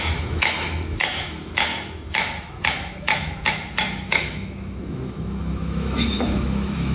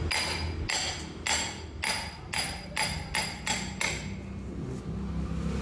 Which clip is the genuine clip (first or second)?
second